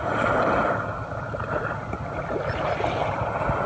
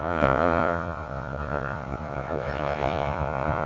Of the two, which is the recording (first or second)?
first